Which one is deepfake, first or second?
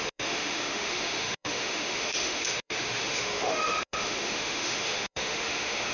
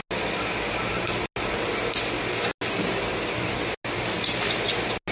first